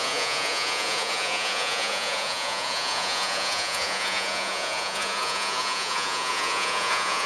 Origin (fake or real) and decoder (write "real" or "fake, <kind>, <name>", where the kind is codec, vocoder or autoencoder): fake, vocoder, Vocos